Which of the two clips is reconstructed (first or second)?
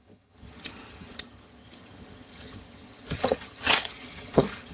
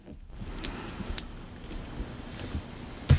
first